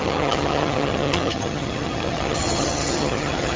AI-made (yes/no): yes